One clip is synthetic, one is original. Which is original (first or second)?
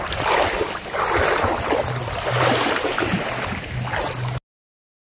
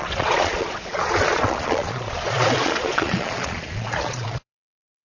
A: first